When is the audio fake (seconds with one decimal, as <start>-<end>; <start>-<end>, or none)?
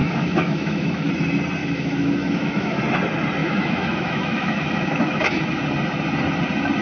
0.0-1.1; 1.6-2.8; 3.4-5.3